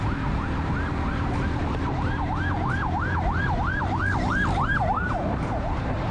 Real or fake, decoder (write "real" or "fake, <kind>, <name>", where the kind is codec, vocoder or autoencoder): fake, vocoder, BigVGAN v2